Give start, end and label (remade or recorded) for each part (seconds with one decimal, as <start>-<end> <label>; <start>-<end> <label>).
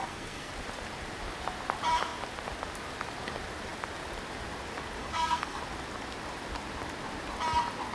0.0-0.5 remade; 0.5-5.0 recorded; 5.0-5.6 remade; 5.6-7.9 recorded